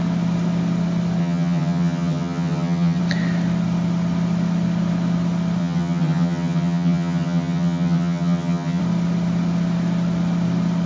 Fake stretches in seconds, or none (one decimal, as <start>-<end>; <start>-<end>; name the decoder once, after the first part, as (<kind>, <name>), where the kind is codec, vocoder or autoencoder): 1.2-3.0 (vocoder, HiFi-GAN); 5.6-8.8